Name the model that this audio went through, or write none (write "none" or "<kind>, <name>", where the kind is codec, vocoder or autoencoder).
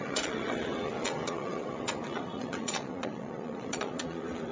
vocoder, Vocos